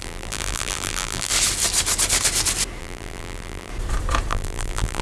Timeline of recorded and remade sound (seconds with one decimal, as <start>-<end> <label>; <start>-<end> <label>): 0.0-1.3 remade; 1.3-2.8 recorded; 2.8-3.7 remade; 3.7-4.3 recorded; 4.3-5.0 remade

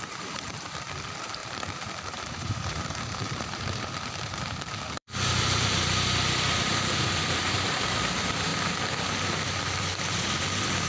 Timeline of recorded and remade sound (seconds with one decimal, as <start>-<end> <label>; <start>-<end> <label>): 0.0-8.5 remade; 8.5-10.0 recorded; 10.0-10.9 remade